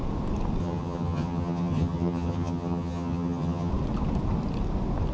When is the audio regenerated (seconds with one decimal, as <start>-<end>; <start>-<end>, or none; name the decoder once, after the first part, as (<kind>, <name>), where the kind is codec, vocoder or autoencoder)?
0.6-3.7 (vocoder, HiFi-GAN)